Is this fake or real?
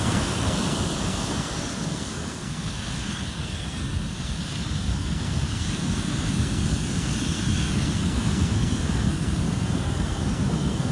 fake